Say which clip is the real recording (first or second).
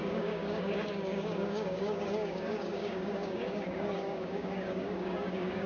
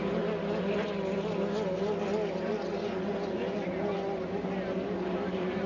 second